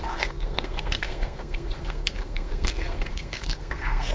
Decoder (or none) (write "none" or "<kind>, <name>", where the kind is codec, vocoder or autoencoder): codec, SNAC